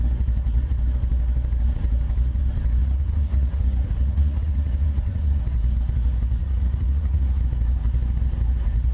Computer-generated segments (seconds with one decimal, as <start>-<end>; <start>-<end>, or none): 2.8-5.4; 6.4-7.4